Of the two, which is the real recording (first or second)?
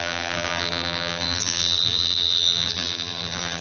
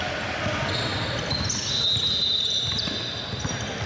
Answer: second